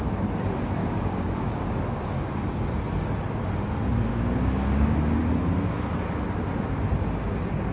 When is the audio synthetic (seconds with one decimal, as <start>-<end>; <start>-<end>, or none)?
0.8-2.0; 4.1-5.2